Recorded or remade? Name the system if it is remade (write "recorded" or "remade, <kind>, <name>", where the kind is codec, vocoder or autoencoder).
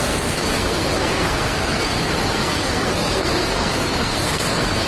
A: remade, codec, SNAC